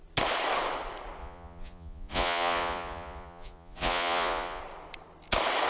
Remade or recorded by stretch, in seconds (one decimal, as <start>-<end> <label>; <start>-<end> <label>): 0.0-1.2 recorded; 1.2-4.6 remade; 4.6-5.7 recorded